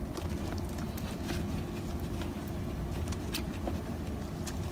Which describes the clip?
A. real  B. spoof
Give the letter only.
A